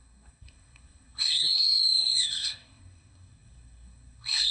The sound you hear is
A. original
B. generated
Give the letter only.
B